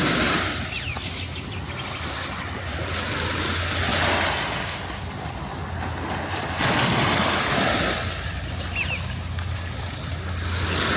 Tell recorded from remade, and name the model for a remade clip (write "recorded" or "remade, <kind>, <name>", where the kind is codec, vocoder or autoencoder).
recorded